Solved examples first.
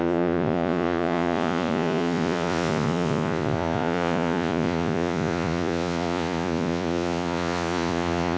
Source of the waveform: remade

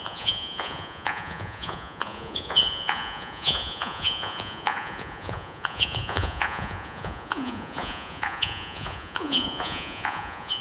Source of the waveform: remade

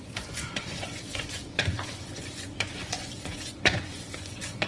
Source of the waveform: remade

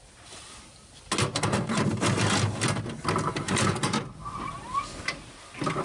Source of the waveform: recorded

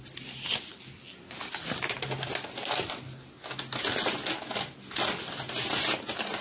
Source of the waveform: recorded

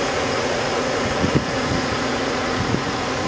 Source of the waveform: remade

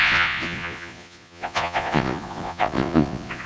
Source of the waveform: remade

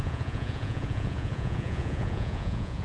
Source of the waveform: remade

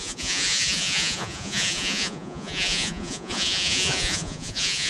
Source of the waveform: remade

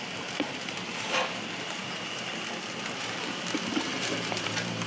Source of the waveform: recorded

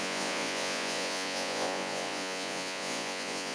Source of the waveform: remade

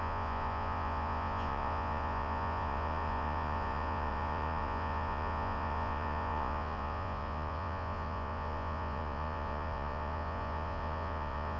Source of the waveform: remade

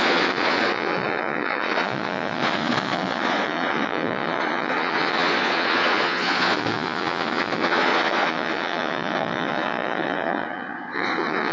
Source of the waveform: remade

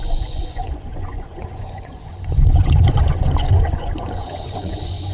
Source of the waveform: remade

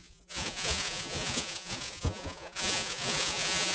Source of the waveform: remade